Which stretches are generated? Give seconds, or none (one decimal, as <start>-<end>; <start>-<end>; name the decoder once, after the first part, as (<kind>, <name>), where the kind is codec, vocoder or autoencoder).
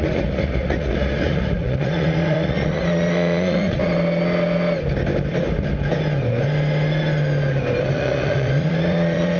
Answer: 0.0-3.8 (vocoder, Vocos); 7.9-9.4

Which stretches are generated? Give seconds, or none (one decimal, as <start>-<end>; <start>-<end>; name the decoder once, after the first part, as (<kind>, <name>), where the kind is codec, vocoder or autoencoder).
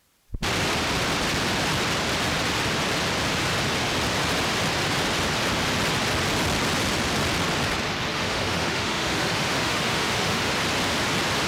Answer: 8.1-10.5 (autoencoder, DAC-VAE)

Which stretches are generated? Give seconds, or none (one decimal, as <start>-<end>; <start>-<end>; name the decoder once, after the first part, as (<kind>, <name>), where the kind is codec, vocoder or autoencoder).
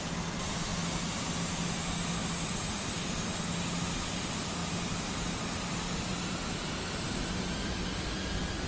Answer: none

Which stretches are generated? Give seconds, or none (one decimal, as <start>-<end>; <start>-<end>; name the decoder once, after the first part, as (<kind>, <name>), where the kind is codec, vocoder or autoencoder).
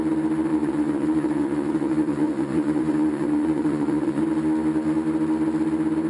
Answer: 0.5-4.2 (vocoder, Vocos)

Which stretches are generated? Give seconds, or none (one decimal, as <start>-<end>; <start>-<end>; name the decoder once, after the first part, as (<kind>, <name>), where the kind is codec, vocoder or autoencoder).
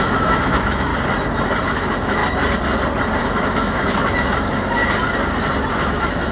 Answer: 0.0-0.9 (autoencoder, DAC-VAE); 1.7-2.2; 3.2-4.8; 5.7-6.3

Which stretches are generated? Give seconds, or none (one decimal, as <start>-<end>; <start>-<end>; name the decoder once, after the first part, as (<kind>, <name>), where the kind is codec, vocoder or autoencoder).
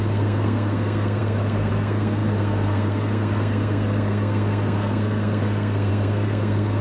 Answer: 0.0-6.8 (codec, SNAC)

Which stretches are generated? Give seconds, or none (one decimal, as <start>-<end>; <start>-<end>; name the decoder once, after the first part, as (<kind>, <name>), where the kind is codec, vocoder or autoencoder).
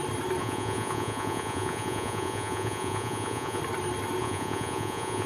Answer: 0.4-3.6 (vocoder, Vocos); 4.2-5.3